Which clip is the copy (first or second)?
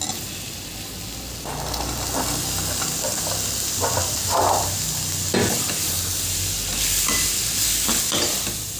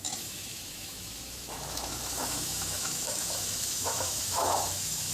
second